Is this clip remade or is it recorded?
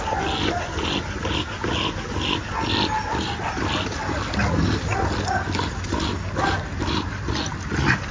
recorded